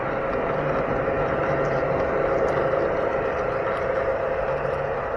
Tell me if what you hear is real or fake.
real